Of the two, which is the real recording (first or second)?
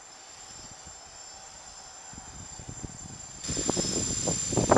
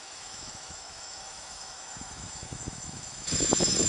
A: first